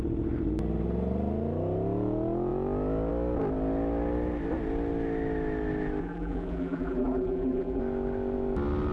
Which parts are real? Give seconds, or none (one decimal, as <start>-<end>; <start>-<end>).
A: 0.0-6.0; 7.8-8.9